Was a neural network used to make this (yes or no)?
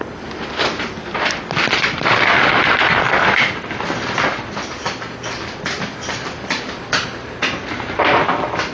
no